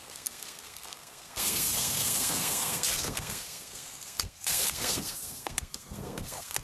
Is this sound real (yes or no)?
no